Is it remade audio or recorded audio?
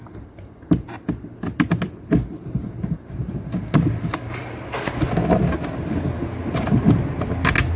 recorded